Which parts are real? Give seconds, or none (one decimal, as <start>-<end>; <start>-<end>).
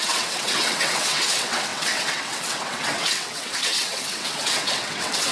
none